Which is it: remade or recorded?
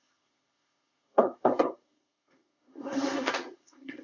remade